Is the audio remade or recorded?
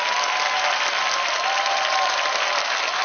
recorded